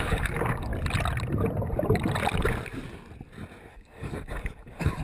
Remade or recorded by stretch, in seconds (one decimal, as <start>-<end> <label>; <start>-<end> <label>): 0.0-0.7 remade; 0.7-3.7 recorded; 3.7-5.0 remade